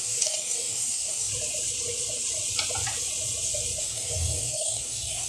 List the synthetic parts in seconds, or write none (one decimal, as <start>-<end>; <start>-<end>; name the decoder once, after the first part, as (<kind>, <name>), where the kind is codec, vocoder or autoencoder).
0.0-1.3 (codec, DAC); 3.8-5.3